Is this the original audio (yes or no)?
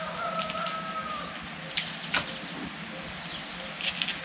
yes